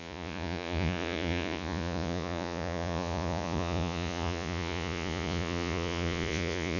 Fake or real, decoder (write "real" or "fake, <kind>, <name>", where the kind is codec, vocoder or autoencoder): fake, vocoder, Vocos